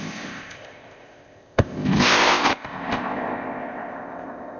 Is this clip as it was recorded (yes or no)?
no